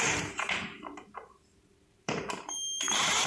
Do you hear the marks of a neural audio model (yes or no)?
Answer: yes